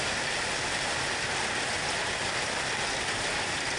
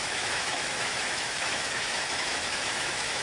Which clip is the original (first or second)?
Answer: first